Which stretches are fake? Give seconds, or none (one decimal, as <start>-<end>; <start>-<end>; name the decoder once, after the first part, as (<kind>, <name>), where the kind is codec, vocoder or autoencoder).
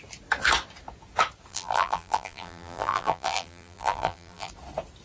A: 1.5-4.5 (vocoder, BigVGAN v2)